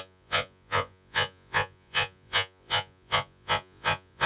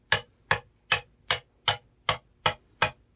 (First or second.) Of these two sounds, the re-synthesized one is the first